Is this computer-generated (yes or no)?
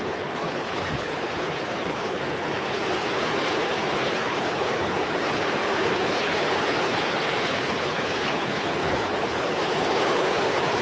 yes